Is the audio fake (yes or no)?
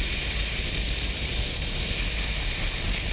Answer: no